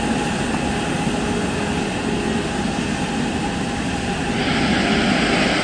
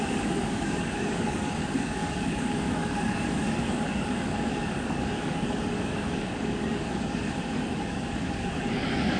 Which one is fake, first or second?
second